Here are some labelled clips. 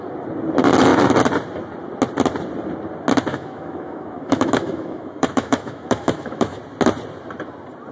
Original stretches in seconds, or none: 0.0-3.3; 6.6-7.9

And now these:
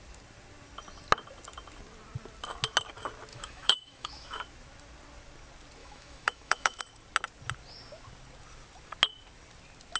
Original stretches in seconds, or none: 0.0-3.3; 4.4-5.8; 6.8-10.0